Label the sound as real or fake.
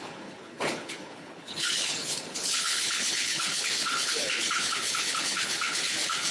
fake